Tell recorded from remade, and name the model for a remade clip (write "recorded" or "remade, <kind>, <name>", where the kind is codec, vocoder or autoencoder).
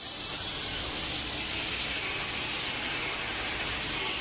recorded